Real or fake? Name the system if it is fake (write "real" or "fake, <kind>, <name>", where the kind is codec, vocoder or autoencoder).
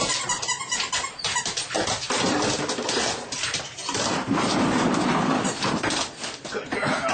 real